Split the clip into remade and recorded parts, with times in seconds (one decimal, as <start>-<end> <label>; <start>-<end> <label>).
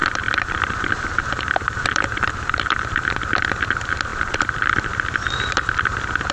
0.0-3.1 remade; 3.1-4.1 recorded; 4.1-4.9 remade; 4.9-6.3 recorded